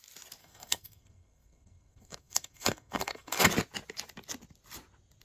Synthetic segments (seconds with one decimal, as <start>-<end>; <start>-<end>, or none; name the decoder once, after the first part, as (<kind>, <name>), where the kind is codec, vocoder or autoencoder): 0.4-3.5 (codec, SNAC)